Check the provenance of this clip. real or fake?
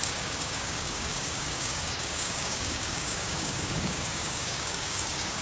fake